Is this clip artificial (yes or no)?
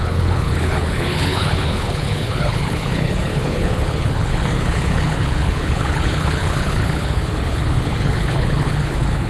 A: yes